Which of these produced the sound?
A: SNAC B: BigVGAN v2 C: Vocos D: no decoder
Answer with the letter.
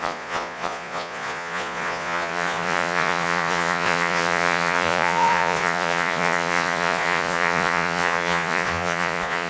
C